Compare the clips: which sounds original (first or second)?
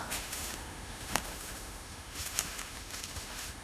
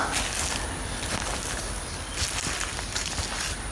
second